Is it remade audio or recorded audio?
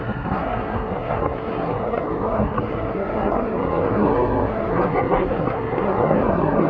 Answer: remade